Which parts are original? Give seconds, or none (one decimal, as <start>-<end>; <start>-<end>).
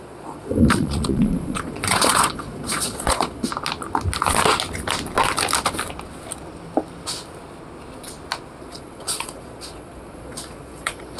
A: 3.5-8.6